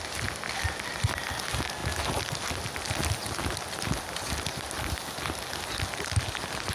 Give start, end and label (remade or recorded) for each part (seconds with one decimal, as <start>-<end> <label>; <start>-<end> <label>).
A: 0.0-6.7 recorded